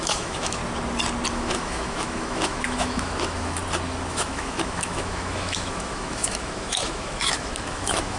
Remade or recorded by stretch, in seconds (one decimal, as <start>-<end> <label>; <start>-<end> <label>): 0.0-0.6 remade; 0.6-1.3 recorded; 1.3-3.6 remade; 3.6-4.1 recorded; 4.1-8.2 remade